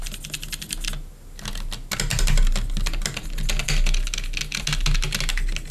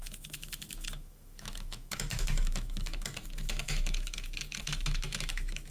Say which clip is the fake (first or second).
second